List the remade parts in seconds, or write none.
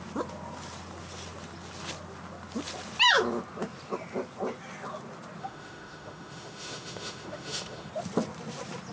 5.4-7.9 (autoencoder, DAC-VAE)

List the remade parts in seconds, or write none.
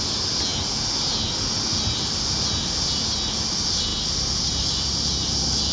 none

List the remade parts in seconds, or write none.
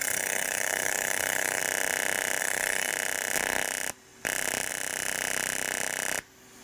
0.0-1.6 (codec, DAC); 2.4-2.9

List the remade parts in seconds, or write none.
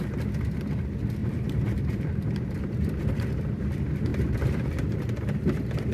1.2-3.0 (vocoder, BigVGAN v2)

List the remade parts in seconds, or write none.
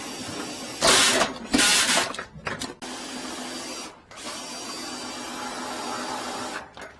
none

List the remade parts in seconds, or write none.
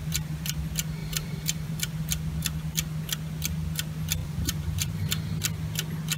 0.0-0.6 (vocoder, BigVGAN v2); 1.0-2.0; 4.2-5.1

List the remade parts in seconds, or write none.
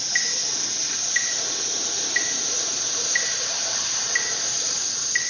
none